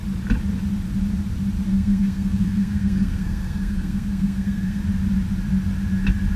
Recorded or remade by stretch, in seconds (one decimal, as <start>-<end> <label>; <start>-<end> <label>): 0.0-1.7 recorded; 1.7-4.8 remade; 4.8-6.4 recorded